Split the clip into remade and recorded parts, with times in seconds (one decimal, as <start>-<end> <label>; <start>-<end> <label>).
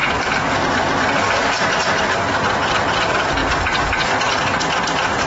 0.0-5.3 recorded